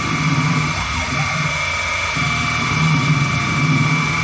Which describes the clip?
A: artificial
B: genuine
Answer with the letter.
A